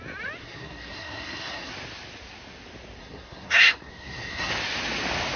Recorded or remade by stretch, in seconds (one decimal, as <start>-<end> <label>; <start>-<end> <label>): 0.0-0.4 recorded; 0.4-1.7 remade; 1.7-3.0 recorded; 3.0-4.5 remade; 4.5-5.4 recorded